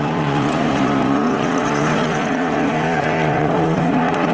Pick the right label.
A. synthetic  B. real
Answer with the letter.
A